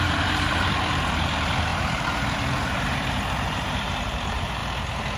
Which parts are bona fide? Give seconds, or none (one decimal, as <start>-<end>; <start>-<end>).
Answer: 4.6-5.2